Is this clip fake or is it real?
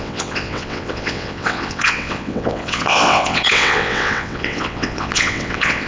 fake